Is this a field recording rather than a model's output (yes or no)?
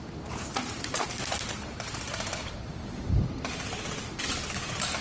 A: yes